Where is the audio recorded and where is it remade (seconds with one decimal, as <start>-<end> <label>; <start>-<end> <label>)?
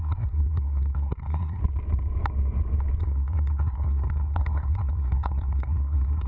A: 0.0-1.6 remade; 1.6-3.0 recorded; 3.0-6.3 remade